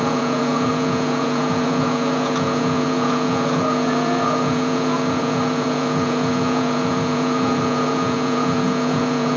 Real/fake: fake